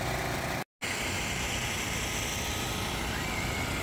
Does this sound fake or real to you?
real